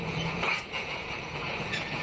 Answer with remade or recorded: remade